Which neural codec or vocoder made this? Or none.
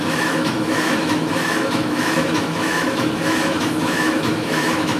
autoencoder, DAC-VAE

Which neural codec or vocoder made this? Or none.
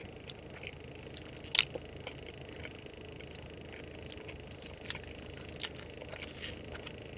none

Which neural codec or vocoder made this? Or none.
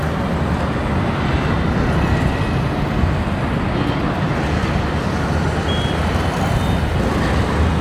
none